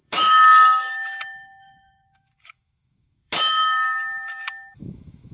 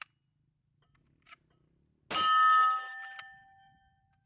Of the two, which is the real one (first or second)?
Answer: second